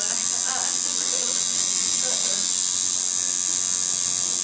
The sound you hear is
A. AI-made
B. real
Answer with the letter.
B